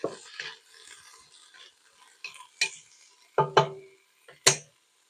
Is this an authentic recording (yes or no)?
yes